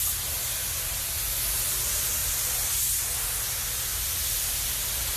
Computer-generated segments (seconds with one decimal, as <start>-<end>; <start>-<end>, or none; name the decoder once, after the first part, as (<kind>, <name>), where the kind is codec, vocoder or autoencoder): none